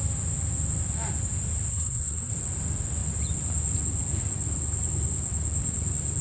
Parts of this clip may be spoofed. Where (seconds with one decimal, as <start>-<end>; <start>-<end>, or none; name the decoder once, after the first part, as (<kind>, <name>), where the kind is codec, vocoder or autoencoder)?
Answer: 1.7-2.3 (codec, SNAC)